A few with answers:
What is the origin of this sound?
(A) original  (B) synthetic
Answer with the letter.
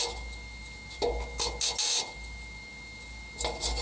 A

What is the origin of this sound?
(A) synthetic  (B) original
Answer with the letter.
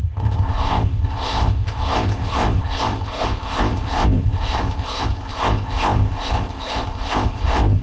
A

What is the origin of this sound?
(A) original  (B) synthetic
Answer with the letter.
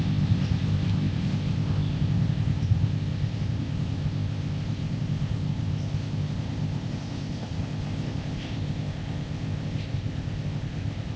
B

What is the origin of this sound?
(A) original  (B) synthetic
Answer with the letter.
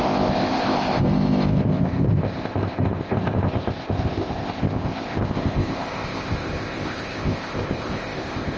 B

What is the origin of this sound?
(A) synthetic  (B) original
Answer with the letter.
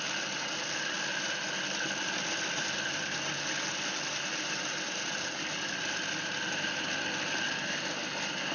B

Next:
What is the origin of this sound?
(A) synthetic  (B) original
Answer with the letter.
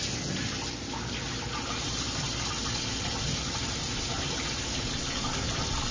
B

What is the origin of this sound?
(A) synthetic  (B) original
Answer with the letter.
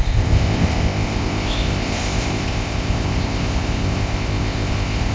A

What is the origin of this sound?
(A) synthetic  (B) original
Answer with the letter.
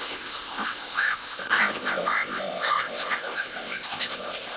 A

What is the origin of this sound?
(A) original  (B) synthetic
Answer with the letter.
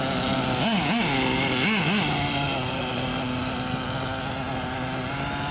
A